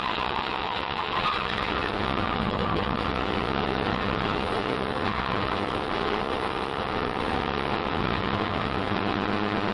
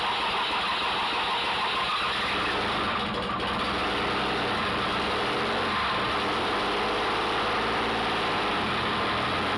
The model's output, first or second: first